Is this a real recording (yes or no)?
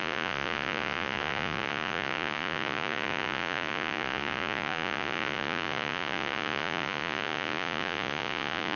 no